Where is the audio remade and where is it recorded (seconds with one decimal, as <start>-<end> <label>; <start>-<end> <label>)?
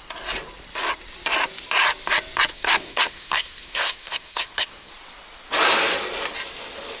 0.0-2.5 recorded; 2.5-4.9 remade; 4.9-7.0 recorded